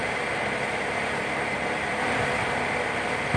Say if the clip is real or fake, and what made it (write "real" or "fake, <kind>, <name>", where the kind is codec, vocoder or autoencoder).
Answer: fake, vocoder, BigVGAN v2